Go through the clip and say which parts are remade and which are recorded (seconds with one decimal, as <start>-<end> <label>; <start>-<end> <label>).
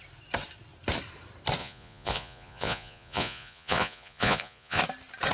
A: 0.0-1.6 recorded; 1.6-4.8 remade; 4.8-5.3 recorded